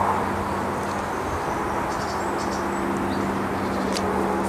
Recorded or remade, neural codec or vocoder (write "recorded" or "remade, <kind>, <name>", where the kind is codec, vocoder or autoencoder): recorded